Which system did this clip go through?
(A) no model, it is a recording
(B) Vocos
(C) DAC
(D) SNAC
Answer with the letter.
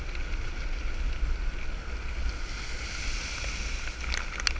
A